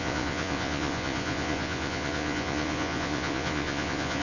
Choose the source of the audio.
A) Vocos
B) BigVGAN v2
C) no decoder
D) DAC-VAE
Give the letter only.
A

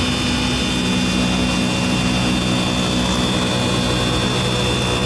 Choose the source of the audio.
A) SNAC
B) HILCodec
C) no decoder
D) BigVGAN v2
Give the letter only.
C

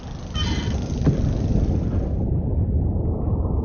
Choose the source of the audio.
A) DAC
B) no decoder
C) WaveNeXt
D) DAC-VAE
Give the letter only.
B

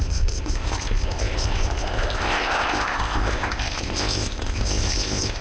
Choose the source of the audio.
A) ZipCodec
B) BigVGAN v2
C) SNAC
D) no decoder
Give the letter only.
A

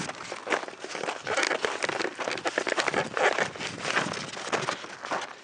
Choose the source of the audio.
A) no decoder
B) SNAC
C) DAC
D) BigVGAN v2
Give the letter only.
A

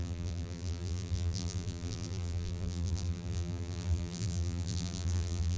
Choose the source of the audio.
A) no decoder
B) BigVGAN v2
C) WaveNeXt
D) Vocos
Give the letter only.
B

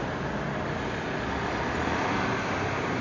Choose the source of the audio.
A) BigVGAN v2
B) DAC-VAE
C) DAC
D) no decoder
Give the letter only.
D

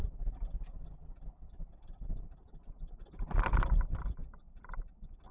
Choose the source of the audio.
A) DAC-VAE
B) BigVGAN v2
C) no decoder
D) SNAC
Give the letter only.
C